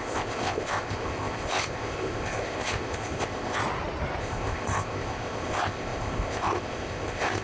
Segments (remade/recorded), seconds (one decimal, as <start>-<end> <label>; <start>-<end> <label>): 0.0-3.6 remade; 3.6-4.2 recorded; 4.2-7.4 remade